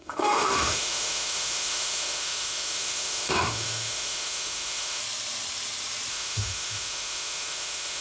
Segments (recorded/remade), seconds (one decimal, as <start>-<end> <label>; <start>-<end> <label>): 0.0-5.0 remade; 5.0-6.1 recorded; 6.1-8.0 remade